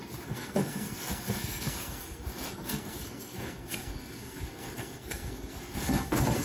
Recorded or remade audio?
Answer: remade